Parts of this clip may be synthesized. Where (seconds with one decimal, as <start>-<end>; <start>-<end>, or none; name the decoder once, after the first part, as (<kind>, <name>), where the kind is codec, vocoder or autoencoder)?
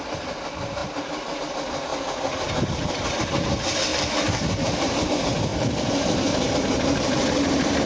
3.9-5.1 (vocoder, BigVGAN v2); 5.5-6.5